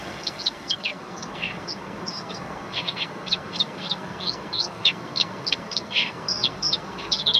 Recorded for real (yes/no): no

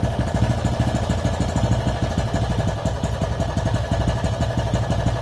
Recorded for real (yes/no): yes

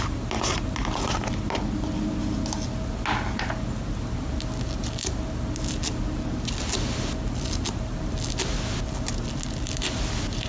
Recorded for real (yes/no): yes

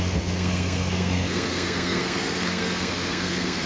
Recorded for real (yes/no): no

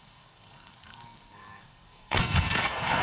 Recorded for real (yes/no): no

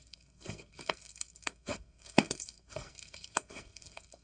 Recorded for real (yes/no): no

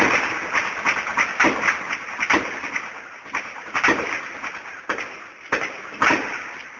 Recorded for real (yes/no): yes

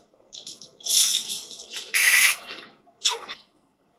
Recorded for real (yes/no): no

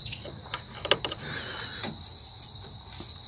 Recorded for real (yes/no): yes